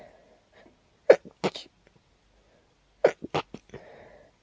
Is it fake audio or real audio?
real